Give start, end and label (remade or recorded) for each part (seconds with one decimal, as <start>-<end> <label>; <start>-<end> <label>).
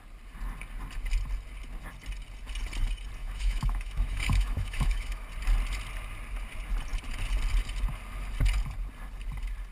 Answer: 0.0-3.2 recorded; 3.2-5.3 remade; 5.3-9.7 recorded